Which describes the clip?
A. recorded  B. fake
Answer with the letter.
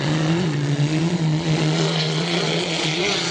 B